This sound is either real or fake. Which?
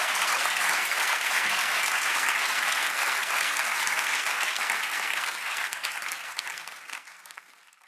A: fake